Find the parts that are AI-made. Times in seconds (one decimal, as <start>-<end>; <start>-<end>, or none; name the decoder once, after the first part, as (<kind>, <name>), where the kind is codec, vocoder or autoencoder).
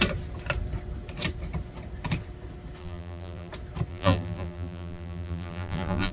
2.8-3.5 (vocoder, BigVGAN v2); 3.9-6.1